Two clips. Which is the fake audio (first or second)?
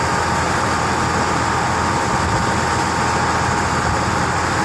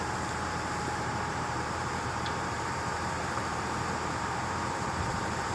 second